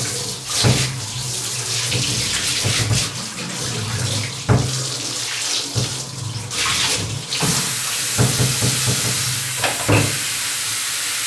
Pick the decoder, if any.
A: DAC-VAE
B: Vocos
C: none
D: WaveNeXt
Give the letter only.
C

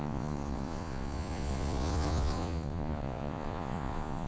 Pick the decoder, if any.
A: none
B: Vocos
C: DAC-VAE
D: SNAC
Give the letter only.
B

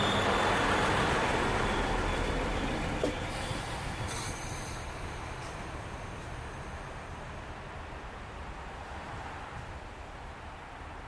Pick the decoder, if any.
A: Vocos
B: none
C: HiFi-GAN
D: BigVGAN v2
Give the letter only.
B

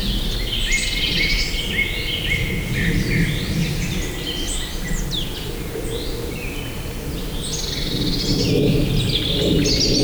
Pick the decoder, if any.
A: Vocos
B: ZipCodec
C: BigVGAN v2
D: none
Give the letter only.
D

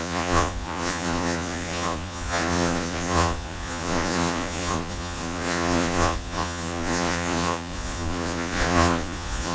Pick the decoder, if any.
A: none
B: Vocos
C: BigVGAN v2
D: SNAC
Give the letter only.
B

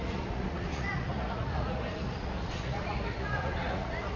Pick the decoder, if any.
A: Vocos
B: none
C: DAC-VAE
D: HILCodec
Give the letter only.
A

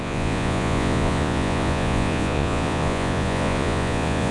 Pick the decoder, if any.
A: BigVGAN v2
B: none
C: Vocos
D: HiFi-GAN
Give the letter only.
C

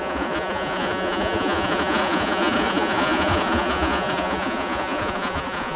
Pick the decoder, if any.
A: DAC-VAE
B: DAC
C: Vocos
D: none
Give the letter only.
C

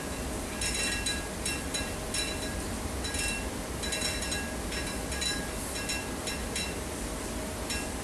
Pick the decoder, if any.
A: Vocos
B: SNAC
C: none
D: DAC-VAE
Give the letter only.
C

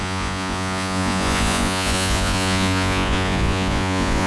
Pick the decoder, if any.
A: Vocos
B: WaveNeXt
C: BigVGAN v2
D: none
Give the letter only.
A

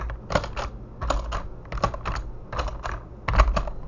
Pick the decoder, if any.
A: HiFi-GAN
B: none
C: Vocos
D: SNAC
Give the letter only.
B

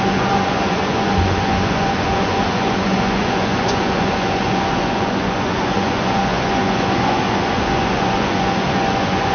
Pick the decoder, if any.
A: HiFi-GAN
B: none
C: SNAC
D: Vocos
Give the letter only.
D